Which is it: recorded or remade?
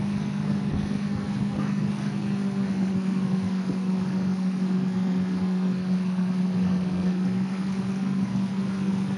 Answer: remade